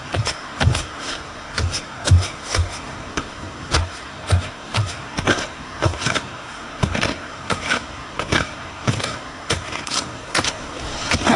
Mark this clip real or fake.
fake